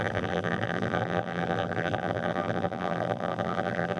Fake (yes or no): yes